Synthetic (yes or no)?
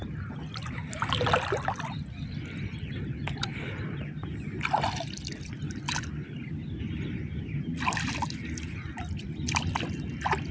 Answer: no